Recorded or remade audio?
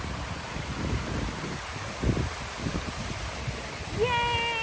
recorded